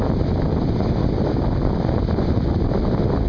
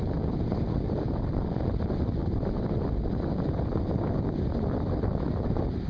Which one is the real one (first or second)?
first